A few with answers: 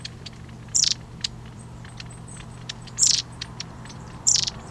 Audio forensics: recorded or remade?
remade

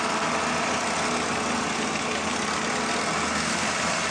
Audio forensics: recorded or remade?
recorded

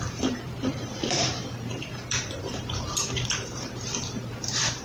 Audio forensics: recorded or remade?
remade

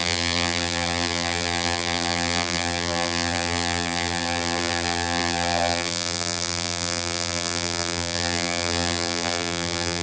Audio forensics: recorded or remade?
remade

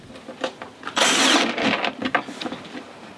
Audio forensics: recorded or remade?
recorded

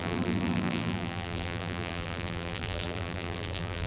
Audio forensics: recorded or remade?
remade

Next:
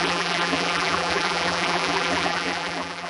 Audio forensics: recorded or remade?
remade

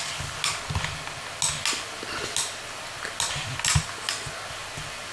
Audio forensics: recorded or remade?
recorded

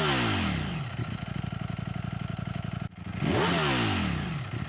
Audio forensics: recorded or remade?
recorded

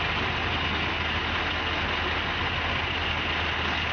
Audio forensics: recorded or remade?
recorded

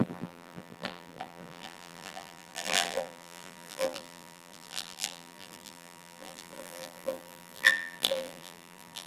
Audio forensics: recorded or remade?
remade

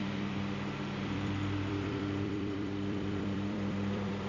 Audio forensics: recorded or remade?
remade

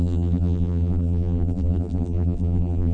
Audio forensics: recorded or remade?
remade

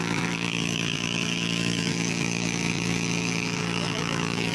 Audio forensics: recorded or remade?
remade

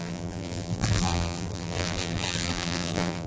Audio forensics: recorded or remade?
remade